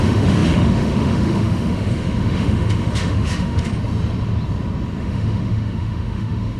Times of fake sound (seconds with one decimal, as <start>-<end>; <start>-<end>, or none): 0.0-3.7; 5.0-6.6